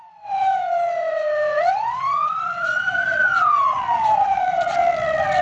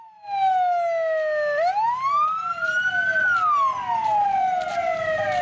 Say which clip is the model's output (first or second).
first